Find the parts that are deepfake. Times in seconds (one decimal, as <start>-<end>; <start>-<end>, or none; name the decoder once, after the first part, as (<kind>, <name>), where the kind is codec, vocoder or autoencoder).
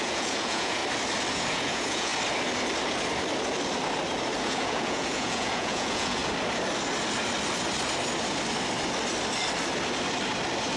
0.0-0.8 (vocoder, Vocos); 1.3-2.1; 4.4-6.2